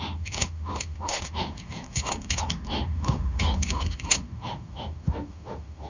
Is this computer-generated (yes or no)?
yes